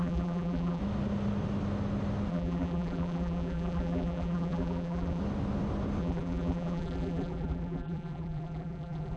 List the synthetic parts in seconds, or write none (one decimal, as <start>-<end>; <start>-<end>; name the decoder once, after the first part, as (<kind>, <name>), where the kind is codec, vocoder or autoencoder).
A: 0.0-0.8 (vocoder, BigVGAN v2); 2.3-5.2; 6.0-9.2